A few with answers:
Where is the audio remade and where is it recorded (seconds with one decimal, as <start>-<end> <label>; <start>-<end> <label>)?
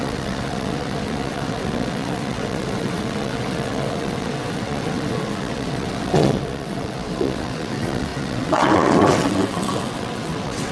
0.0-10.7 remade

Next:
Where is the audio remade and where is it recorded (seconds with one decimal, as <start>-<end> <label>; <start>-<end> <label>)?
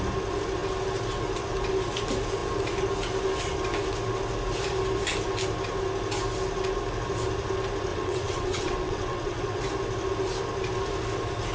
0.0-7.9 recorded; 7.9-9.6 remade; 9.6-11.5 recorded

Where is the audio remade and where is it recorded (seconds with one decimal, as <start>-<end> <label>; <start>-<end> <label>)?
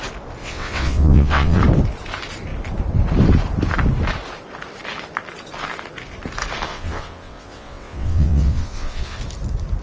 0.0-0.4 recorded; 0.4-1.6 remade; 1.6-6.7 recorded; 6.7-9.2 remade; 9.2-9.8 recorded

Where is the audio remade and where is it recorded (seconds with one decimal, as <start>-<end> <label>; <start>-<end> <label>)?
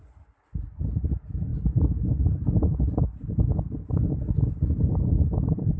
0.0-5.8 recorded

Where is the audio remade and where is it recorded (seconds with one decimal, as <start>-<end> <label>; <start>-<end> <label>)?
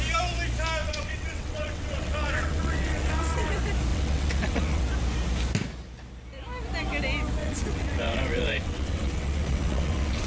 0.0-0.8 recorded; 0.8-3.5 remade; 3.5-3.9 recorded; 3.9-4.8 remade; 4.8-7.4 recorded; 7.4-10.3 remade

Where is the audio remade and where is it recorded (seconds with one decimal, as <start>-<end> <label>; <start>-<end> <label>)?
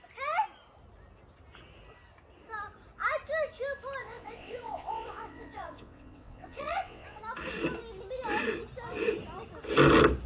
0.0-4.0 recorded; 4.0-7.2 remade; 7.2-10.3 recorded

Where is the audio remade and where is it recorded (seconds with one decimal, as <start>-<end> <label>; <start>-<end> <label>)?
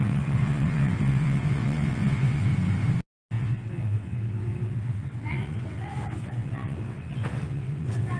0.0-2.5 remade; 2.5-3.3 recorded; 3.3-8.2 remade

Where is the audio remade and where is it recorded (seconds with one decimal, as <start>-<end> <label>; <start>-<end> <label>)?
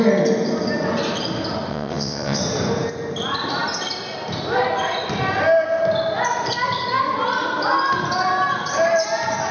0.0-1.7 recorded; 1.7-2.4 remade; 2.4-9.5 recorded